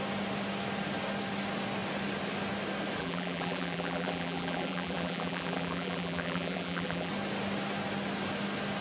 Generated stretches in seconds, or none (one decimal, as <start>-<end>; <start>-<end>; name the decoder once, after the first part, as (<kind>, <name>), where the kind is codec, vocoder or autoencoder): 3.0-7.1 (vocoder, BigVGAN v2)